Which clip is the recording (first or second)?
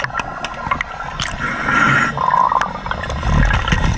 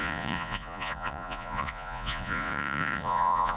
first